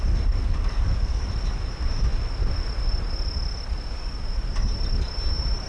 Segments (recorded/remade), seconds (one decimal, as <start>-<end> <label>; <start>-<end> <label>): 0.0-0.4 recorded; 0.4-1.3 remade; 1.3-5.7 recorded